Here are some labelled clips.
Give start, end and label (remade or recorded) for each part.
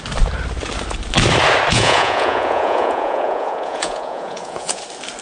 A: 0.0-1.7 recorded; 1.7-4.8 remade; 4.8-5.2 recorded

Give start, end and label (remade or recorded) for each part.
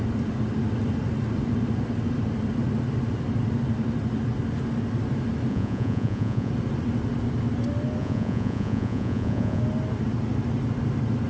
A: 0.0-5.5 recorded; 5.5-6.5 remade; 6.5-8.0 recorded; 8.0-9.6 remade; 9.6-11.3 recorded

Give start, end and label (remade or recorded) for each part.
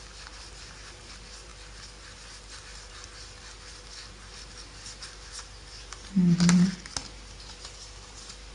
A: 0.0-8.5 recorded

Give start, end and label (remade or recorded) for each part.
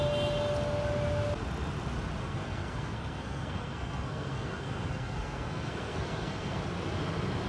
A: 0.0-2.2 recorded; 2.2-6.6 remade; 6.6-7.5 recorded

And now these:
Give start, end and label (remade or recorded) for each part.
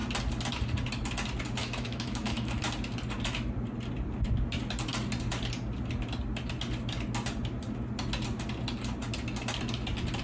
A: 0.0-1.6 recorded; 1.6-2.6 remade; 2.6-10.2 recorded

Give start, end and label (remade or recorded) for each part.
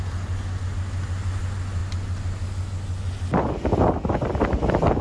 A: 0.0-5.0 recorded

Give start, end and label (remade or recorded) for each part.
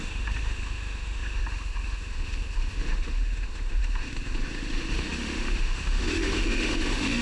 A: 0.0-7.2 remade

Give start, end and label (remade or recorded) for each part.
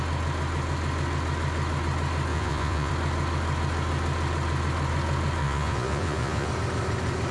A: 0.0-2.3 recorded; 2.3-2.9 remade; 2.9-5.4 recorded; 5.4-6.5 remade; 6.5-7.3 recorded